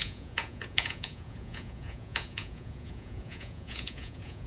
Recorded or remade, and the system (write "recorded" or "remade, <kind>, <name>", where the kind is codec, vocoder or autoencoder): remade, vocoder, Vocos